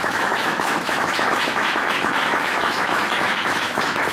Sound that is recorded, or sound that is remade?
remade